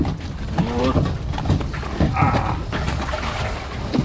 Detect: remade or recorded recorded